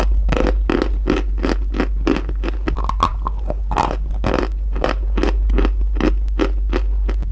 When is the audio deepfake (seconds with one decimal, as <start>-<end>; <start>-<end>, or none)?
none